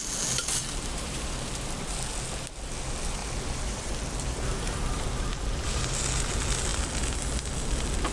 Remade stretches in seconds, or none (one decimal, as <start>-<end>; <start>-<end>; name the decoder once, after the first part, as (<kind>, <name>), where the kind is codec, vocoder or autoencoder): 0.6-1.8 (vocoder, BigVGAN v2); 3.2-5.8